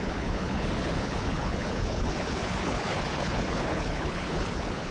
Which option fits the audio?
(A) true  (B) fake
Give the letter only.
B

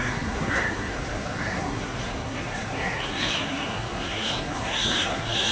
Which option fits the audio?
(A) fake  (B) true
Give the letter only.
A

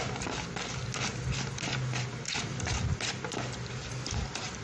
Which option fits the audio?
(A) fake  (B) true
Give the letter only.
B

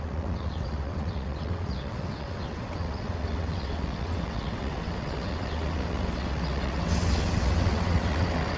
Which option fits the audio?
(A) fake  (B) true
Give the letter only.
A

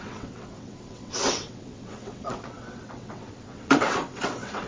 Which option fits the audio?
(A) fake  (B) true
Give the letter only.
A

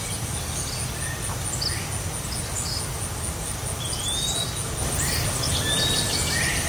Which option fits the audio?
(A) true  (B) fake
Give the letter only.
A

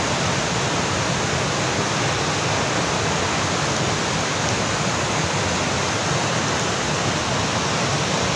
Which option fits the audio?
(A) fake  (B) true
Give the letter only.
B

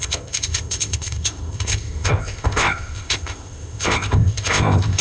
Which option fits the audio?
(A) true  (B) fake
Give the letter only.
B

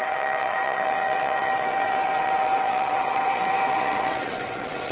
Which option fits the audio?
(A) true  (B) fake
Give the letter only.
B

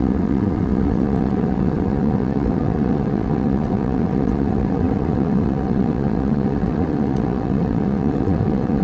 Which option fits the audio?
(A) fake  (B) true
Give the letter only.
A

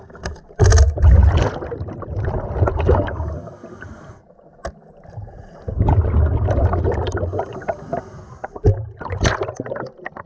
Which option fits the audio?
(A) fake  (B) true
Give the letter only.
B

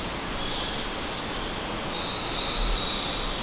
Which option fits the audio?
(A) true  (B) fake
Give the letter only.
A